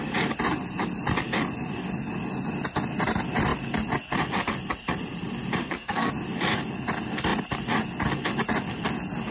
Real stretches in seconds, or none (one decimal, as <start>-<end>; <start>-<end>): 0.0-5.6; 6.1-9.3